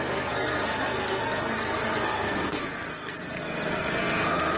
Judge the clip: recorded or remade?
remade